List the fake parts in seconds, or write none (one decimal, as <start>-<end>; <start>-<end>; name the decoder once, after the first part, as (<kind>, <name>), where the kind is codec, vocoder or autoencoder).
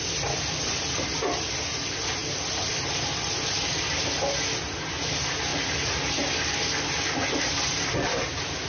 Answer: 5.5-6.1 (vocoder, Vocos)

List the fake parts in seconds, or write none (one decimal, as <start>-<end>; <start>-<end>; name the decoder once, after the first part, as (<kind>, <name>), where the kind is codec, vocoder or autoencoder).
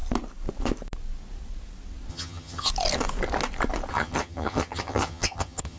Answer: 2.1-2.7 (vocoder, HiFi-GAN); 3.9-5.8